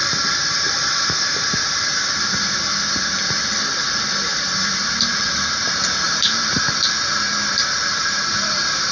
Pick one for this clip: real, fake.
fake